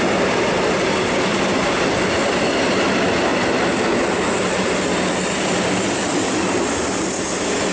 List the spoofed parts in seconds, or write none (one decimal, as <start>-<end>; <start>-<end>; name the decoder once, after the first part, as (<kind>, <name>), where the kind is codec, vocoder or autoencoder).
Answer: none